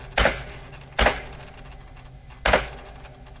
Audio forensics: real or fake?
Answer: real